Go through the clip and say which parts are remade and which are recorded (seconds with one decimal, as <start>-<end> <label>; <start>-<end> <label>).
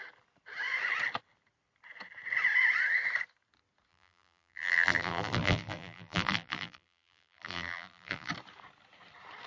0.0-3.9 recorded; 3.9-8.3 remade; 8.3-9.5 recorded